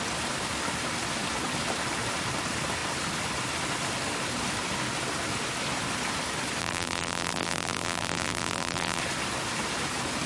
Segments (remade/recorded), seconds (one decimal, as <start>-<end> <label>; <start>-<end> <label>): 0.0-6.6 recorded; 6.6-9.0 remade; 9.0-10.3 recorded